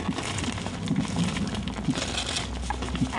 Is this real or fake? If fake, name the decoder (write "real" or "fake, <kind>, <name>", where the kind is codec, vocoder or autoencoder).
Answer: real